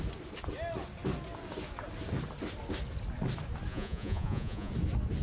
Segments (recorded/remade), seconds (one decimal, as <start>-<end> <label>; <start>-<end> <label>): 0.0-3.7 recorded; 3.7-4.7 remade; 4.7-5.2 recorded

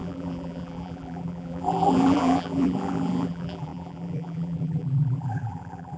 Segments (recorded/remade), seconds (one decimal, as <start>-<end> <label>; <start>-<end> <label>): 0.0-6.0 remade

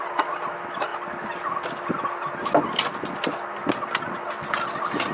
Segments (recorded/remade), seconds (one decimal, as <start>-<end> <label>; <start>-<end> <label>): 0.0-5.1 recorded

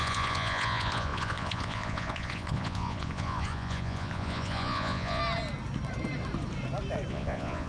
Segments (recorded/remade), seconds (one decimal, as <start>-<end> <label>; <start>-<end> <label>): 0.0-5.2 remade; 5.2-7.1 recorded; 7.1-7.7 remade

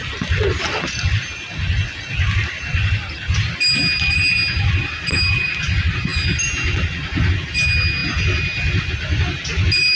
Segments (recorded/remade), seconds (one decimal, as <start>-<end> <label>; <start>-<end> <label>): 0.0-9.9 recorded

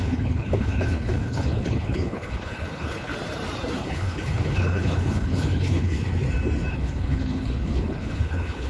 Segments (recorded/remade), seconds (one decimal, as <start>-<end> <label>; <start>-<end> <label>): 0.0-3.1 remade; 3.1-3.8 recorded; 3.8-6.1 remade; 6.1-6.7 recorded; 6.7-8.7 remade